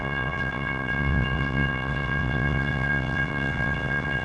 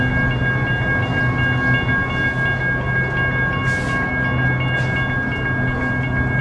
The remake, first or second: first